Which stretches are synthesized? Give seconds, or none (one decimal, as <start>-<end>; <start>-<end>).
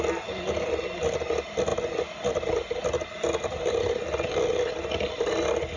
none